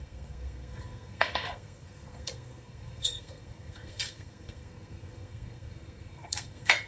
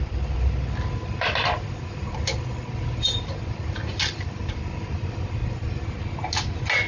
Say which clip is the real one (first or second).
second